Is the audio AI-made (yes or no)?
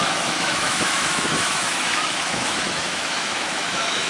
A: yes